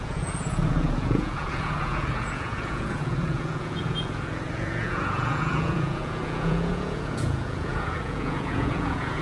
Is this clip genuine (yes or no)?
no